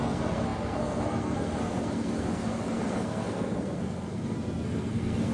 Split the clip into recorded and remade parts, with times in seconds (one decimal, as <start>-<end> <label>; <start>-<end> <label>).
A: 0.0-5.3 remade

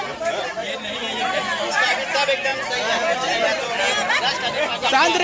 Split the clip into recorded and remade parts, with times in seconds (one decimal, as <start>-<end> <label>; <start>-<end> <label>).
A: 0.0-5.2 recorded

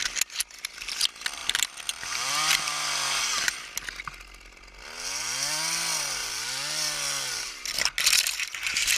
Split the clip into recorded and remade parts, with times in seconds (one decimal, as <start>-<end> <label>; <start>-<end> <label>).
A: 0.0-6.2 recorded; 6.2-7.3 remade; 7.3-9.0 recorded